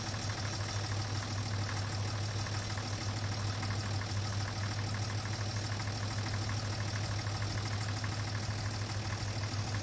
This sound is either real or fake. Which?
real